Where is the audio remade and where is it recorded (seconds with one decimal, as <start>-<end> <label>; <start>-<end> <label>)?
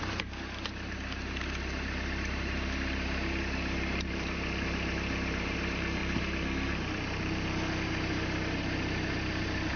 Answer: 0.0-6.0 remade; 6.0-7.8 recorded; 7.8-9.8 remade